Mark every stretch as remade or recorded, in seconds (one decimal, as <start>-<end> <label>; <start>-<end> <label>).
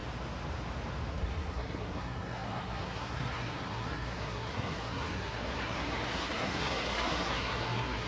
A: 0.0-1.1 recorded; 1.1-8.1 remade